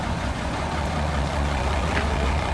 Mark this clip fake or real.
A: fake